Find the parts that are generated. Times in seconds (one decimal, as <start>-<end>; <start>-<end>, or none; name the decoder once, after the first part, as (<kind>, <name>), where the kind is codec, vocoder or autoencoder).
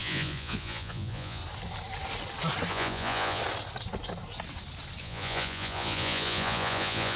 0.0-1.4 (vocoder, Vocos); 2.7-3.4; 5.0-7.2